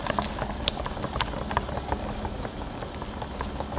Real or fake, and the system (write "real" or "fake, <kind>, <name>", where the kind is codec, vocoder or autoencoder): real